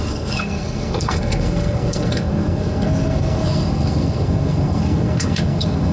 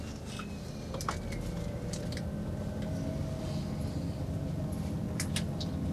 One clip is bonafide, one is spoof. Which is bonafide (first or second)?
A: second